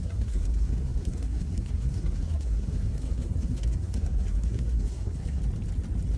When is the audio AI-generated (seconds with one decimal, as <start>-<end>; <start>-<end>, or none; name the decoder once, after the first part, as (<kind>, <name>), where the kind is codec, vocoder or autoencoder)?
0.0-5.4 (codec, SNAC)